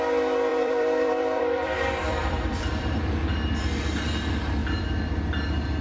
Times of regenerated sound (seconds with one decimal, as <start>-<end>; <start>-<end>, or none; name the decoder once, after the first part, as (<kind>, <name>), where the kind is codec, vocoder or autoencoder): 0.5-3.0 (vocoder, BigVGAN v2); 4.6-5.3